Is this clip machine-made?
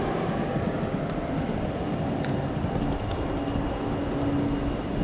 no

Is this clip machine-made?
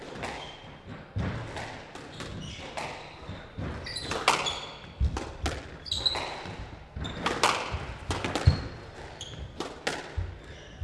no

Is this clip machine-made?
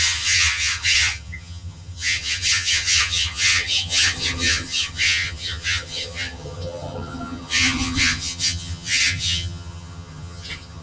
yes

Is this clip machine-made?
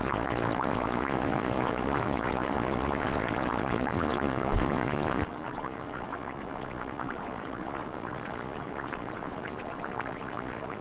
yes